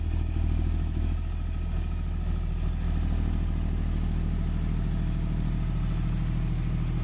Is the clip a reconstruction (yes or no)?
no